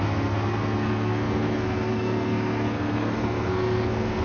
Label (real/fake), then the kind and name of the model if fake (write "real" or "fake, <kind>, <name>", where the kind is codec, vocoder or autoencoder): fake, codec, SNAC